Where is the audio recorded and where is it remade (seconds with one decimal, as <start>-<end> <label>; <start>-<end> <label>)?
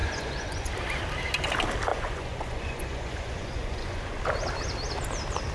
0.0-0.7 remade; 0.7-1.9 recorded; 1.9-4.2 remade; 4.2-5.5 recorded